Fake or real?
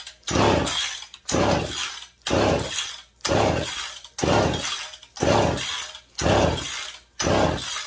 real